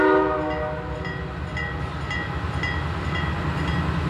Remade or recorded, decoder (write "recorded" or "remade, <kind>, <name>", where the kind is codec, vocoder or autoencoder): recorded